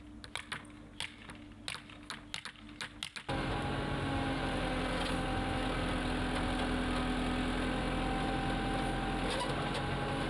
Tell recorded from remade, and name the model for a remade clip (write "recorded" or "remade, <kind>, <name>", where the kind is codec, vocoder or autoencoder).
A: recorded